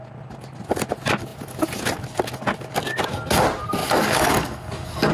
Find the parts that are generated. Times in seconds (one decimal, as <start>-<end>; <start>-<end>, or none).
3.8-5.1